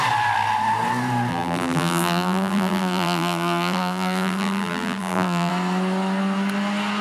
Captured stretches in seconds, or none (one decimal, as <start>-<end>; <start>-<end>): 0.0-1.3; 5.5-7.0